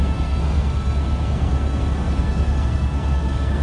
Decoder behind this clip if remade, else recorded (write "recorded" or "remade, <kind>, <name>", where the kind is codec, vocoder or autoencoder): remade, codec, SNAC